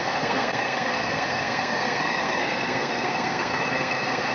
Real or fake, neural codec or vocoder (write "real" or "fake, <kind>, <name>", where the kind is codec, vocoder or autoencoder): fake, codec, SNAC